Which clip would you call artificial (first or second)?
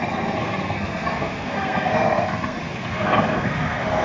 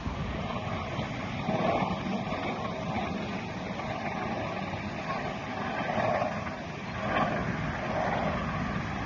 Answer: first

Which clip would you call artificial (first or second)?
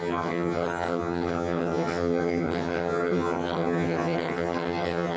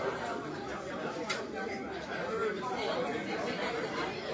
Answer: first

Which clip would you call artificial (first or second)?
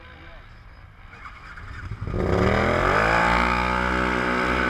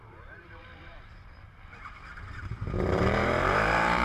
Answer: second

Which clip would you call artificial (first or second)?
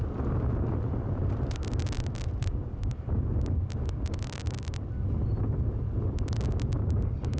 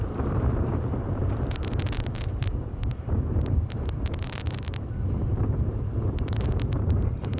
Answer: second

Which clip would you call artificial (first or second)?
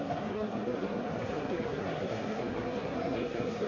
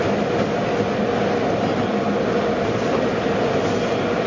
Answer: first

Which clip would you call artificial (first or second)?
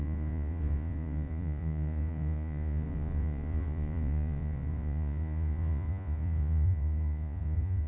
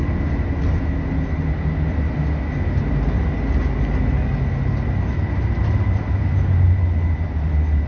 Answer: first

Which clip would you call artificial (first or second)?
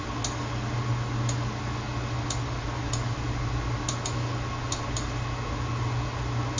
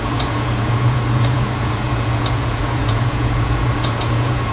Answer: second